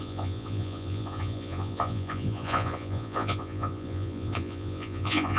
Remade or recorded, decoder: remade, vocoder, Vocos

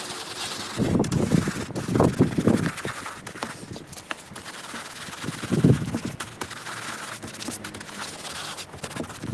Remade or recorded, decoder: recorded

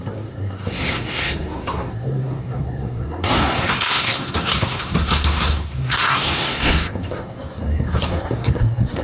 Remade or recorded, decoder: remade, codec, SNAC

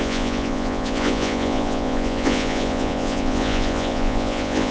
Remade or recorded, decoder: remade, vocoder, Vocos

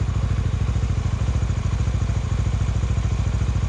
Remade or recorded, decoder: recorded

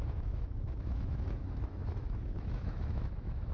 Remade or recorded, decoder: remade, autoencoder, DAC-VAE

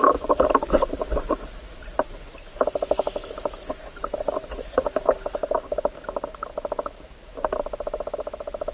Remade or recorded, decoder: recorded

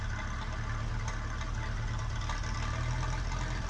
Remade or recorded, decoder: recorded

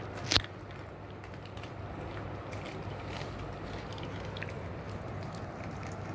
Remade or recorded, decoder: recorded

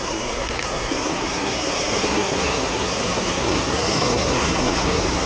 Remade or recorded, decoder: remade, codec, SNAC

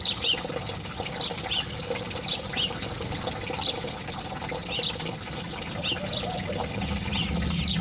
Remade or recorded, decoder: recorded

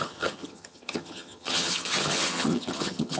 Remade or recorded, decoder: remade, vocoder, HiFi-GAN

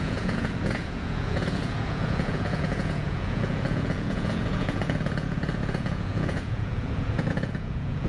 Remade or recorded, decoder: remade, vocoder, Vocos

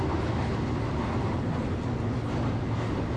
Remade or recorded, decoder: recorded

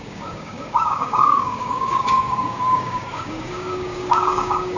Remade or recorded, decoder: remade, codec, DAC